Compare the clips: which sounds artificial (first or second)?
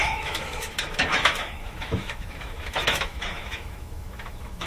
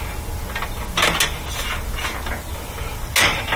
first